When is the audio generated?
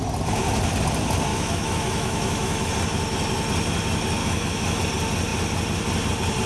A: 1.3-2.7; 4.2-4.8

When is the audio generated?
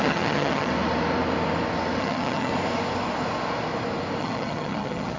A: 0.0-0.7; 2.0-2.5; 4.2-5.2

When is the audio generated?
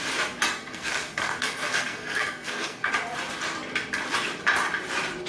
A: 0.6-2.9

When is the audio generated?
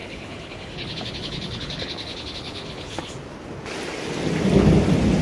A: 0.0-3.1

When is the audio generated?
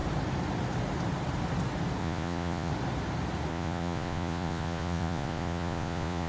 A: 2.0-2.7; 3.5-6.3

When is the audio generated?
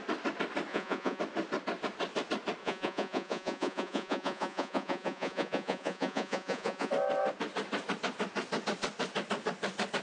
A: 0.7-1.2; 2.6-6.9